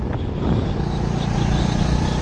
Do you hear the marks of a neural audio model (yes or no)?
no